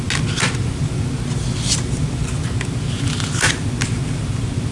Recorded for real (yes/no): yes